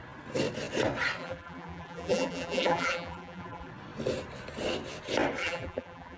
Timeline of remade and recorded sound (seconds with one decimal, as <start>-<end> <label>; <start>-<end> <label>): 0.0-1.2 recorded; 1.2-3.7 remade; 3.7-5.4 recorded; 5.4-6.2 remade